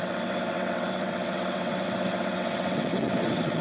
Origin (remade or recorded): remade